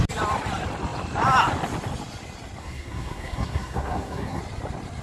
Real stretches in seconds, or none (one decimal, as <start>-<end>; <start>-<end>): 0.0-2.6; 4.4-5.0

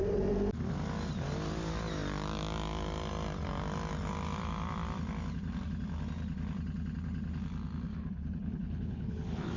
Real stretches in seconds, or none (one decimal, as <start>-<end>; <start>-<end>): 0.0-7.9; 9.1-9.6

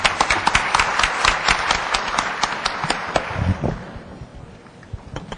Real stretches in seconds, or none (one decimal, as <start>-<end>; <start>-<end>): 0.0-5.4

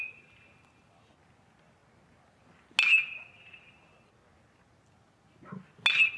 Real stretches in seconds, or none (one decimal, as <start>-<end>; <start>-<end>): 0.0-6.2

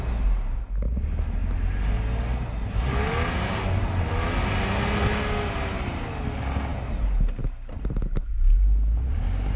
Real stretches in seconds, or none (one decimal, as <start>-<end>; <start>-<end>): 0.0-9.6